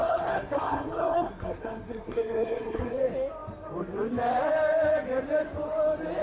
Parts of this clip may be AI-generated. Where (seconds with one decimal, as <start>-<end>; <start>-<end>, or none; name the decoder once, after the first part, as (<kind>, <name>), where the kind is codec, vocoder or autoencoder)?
0.0-3.0 (codec, SNAC)